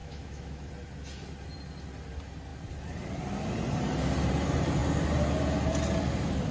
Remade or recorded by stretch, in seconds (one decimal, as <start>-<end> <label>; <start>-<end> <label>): 0.0-0.7 remade; 0.7-6.5 recorded